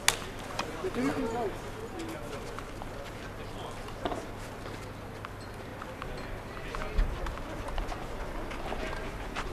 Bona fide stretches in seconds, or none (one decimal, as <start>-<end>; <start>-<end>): 0.0-9.5